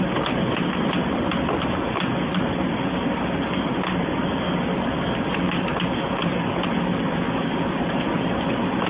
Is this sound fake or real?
real